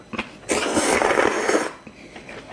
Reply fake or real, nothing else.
fake